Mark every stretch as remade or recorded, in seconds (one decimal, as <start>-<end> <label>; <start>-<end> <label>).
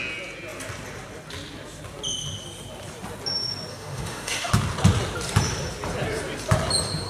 0.0-3.7 recorded; 3.7-4.5 remade; 4.5-7.1 recorded